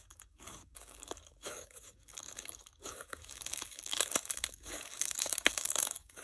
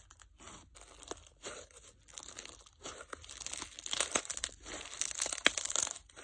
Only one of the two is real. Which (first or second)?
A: second